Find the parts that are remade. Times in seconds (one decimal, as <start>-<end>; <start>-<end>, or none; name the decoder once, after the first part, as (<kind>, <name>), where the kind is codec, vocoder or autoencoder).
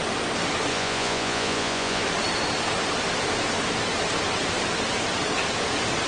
0.7-2.0 (vocoder, Vocos)